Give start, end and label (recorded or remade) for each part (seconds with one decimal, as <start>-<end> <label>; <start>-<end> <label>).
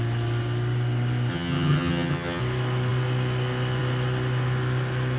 0.0-1.3 recorded; 1.3-2.4 remade; 2.4-5.2 recorded